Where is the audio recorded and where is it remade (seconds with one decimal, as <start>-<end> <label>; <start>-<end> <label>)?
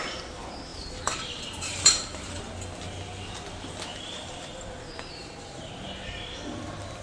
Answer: 0.0-0.7 recorded; 0.7-2.4 remade; 2.4-3.9 recorded; 3.9-5.7 remade; 5.7-7.0 recorded